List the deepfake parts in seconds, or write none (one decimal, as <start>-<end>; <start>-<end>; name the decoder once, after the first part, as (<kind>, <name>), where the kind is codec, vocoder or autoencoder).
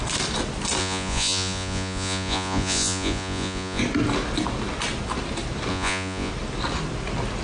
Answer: 0.8-3.8 (vocoder, Vocos); 5.7-6.3